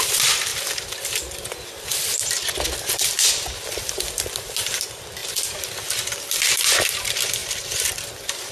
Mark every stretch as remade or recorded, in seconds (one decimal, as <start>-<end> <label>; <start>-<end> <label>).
0.0-7.4 recorded; 7.4-8.5 remade